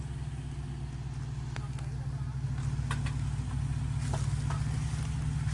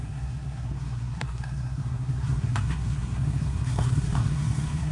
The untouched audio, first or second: first